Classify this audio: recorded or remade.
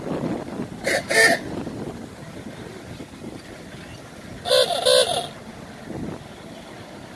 recorded